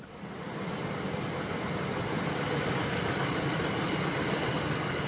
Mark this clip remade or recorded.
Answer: recorded